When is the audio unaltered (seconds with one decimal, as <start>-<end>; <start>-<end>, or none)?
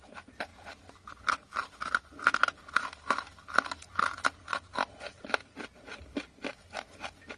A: 0.0-7.4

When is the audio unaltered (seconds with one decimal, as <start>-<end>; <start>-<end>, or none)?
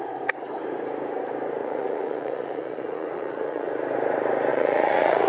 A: 0.0-1.6; 3.7-4.5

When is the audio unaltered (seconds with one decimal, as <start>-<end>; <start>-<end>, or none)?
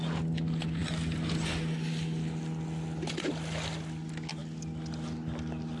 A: 0.0-5.8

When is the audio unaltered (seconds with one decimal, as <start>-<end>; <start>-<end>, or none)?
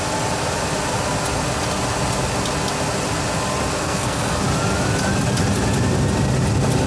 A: 0.0-3.8; 4.4-6.9